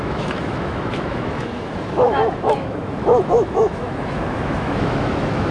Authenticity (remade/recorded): remade